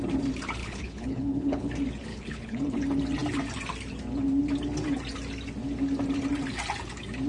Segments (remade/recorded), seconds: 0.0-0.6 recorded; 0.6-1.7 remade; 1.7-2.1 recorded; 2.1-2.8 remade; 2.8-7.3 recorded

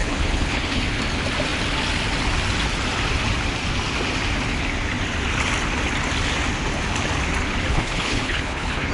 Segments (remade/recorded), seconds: 0.0-0.8 remade; 0.8-7.7 recorded; 7.7-8.9 remade

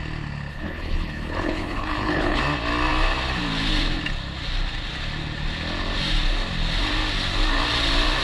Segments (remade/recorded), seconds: 0.0-0.5 recorded; 0.5-2.4 remade; 2.4-8.2 recorded

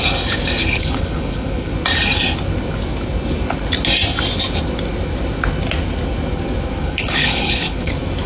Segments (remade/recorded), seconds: 0.0-0.6 recorded; 0.6-1.7 remade; 1.7-6.8 recorded; 6.8-7.9 remade; 7.9-8.3 recorded